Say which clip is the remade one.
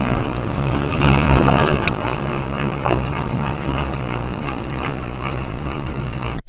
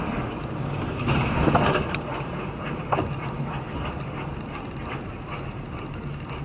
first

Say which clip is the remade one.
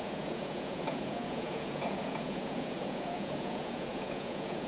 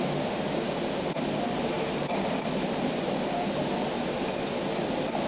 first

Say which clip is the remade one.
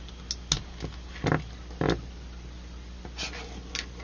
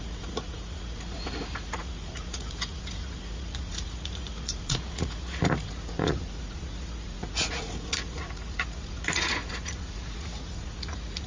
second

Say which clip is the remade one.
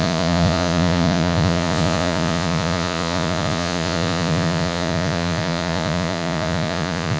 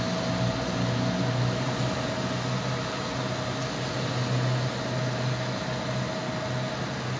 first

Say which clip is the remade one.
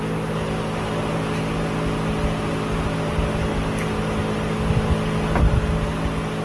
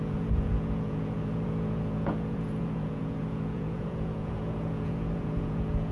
second